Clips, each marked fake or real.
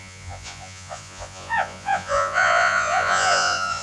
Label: fake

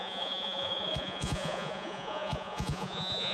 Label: fake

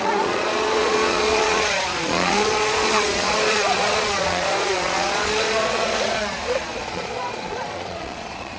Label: fake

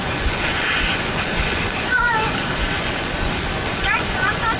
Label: fake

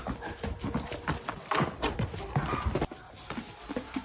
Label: real